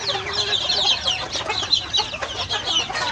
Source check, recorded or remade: recorded